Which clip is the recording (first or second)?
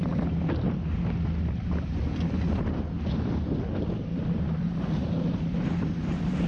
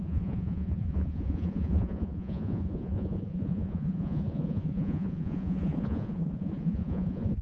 first